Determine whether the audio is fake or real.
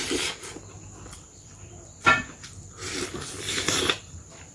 fake